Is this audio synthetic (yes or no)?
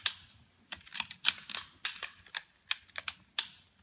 no